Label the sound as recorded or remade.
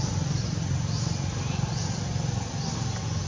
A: recorded